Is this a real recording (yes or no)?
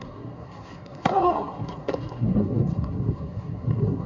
no